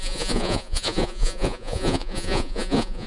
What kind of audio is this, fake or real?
fake